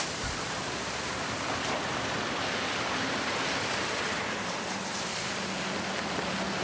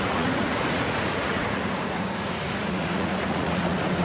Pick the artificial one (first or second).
second